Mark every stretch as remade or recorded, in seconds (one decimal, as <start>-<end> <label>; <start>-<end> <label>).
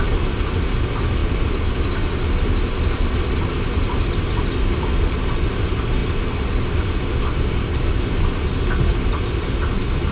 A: 0.0-10.1 recorded